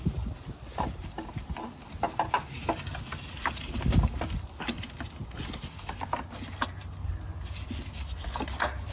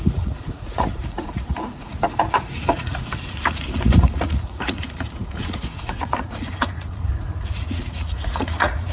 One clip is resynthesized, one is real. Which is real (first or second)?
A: first